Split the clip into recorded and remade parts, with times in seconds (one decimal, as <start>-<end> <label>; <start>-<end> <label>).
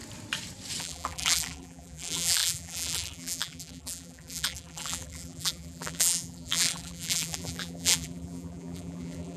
0.0-0.8 recorded; 0.8-9.4 remade